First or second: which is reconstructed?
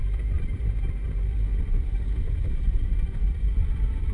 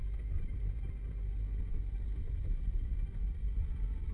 first